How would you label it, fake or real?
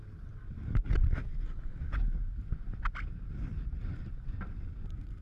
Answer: real